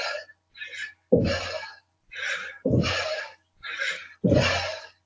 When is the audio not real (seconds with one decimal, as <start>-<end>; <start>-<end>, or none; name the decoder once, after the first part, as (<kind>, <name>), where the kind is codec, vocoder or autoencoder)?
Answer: none